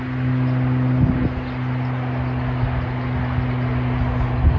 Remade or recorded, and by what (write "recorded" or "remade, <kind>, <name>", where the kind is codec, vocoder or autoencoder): recorded